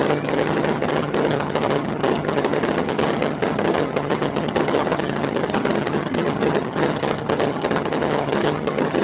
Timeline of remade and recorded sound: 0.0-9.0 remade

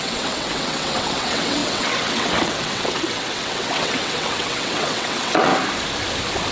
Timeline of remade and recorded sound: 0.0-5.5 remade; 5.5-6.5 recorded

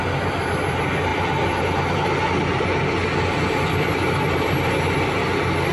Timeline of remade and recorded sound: 0.0-5.7 recorded

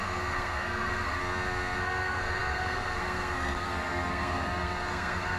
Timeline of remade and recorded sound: 0.0-1.2 remade; 1.2-1.8 recorded; 1.8-5.4 remade

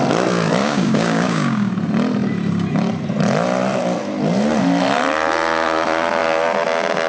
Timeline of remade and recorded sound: 0.0-0.6 recorded; 0.6-1.7 remade; 1.7-7.1 recorded

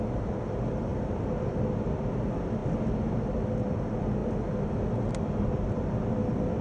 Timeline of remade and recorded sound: 0.0-6.6 recorded

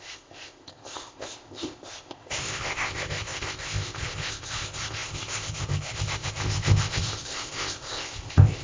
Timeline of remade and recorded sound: 0.0-8.6 remade